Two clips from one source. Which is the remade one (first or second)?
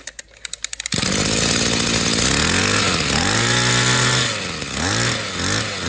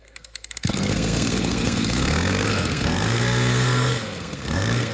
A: second